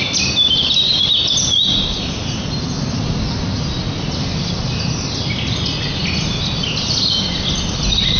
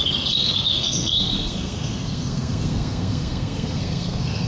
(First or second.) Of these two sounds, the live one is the first